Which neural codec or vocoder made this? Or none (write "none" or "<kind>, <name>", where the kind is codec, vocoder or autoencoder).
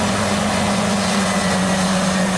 vocoder, Vocos